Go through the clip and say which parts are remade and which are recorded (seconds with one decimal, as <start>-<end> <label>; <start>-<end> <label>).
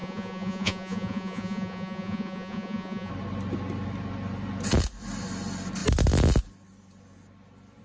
0.0-3.1 remade; 3.1-7.8 recorded